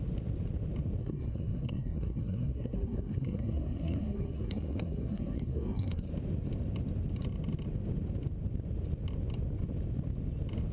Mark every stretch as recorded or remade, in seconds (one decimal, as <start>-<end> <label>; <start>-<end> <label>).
0.0-1.0 recorded; 1.0-6.1 remade; 6.1-10.7 recorded

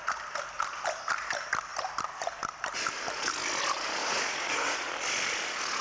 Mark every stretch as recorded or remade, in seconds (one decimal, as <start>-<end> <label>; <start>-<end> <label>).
0.0-4.0 recorded; 4.0-4.9 remade; 4.9-5.8 recorded

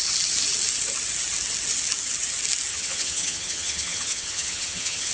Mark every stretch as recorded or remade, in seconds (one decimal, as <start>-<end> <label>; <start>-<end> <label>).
0.0-2.7 recorded; 2.7-5.1 remade

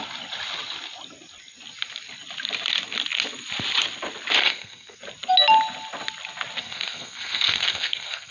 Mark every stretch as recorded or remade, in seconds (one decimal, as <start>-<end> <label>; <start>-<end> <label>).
0.0-4.4 recorded; 4.4-5.0 remade; 5.0-6.6 recorded; 6.6-8.3 remade

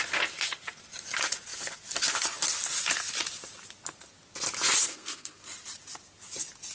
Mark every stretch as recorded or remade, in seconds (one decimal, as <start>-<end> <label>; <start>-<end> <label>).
0.0-4.9 recorded; 4.9-5.4 remade; 5.4-6.7 recorded